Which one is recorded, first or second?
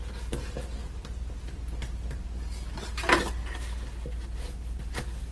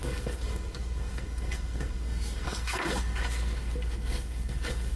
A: first